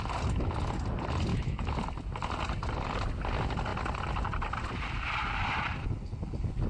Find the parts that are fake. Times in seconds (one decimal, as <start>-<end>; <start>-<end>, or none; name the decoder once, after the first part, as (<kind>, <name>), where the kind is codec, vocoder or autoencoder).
1.3-1.8 (autoencoder, DAC-VAE)